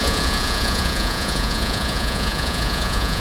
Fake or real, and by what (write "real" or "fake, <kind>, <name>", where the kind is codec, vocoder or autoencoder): fake, vocoder, Vocos